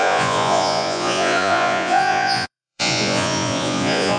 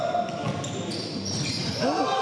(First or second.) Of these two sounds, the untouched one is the second